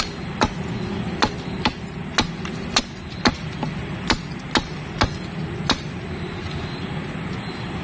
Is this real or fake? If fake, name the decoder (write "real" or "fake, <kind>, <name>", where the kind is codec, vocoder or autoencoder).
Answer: real